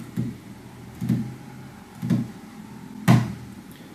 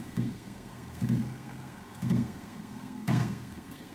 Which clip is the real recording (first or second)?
first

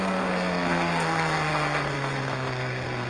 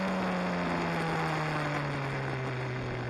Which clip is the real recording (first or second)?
second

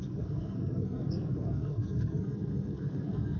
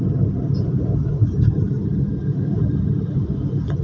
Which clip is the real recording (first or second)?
second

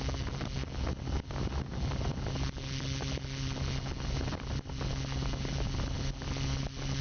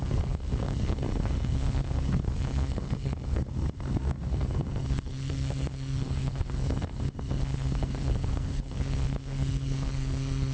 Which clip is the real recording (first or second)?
first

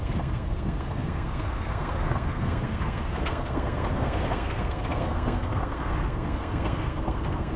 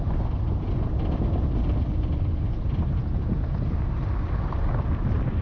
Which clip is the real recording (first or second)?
second